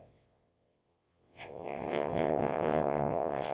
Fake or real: fake